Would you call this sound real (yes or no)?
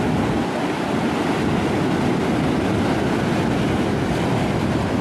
yes